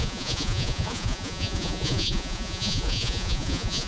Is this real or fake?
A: fake